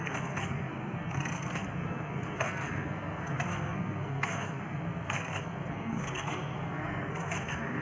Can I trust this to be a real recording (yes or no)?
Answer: no